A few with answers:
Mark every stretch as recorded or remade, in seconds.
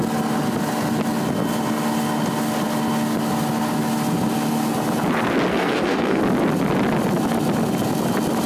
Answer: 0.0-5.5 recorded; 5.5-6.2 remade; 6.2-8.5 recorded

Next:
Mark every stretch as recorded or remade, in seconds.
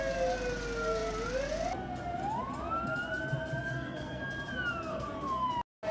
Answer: 0.0-3.6 recorded; 3.6-4.2 remade; 4.2-4.9 recorded; 4.9-5.5 remade; 5.5-5.9 recorded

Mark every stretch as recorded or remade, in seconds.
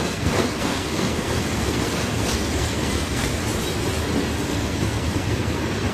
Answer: 0.0-3.4 remade; 3.4-4.5 recorded; 4.5-5.9 remade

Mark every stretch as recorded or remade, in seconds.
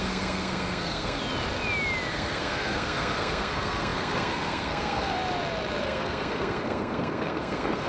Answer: 0.0-1.2 remade; 1.2-2.1 recorded; 2.1-5.2 remade; 5.2-5.8 recorded; 5.8-7.9 remade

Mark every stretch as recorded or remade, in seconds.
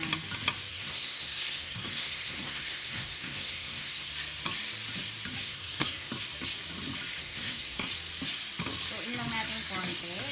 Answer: 0.0-0.7 recorded; 0.7-4.1 remade; 4.1-5.4 recorded; 5.4-6.1 remade; 6.1-7.2 recorded; 7.2-7.9 remade; 7.9-10.3 recorded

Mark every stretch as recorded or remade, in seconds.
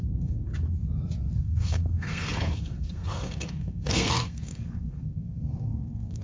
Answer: 0.0-0.5 remade; 0.5-1.4 recorded; 1.4-6.2 remade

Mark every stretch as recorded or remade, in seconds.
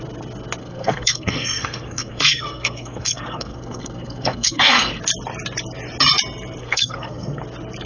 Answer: 0.0-0.6 recorded; 0.6-5.0 remade; 5.0-6.6 recorded; 6.6-7.4 remade; 7.4-7.9 recorded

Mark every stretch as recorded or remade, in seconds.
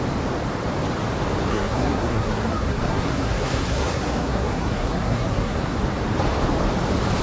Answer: 0.0-1.5 recorded; 1.5-5.8 remade; 5.8-7.2 recorded